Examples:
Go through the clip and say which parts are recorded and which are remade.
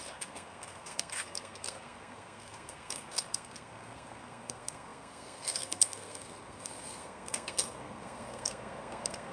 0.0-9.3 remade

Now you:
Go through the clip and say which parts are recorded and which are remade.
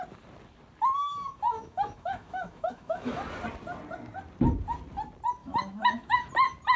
0.0-1.1 recorded; 1.1-3.2 remade; 3.2-5.4 recorded; 5.4-6.3 remade; 6.3-6.8 recorded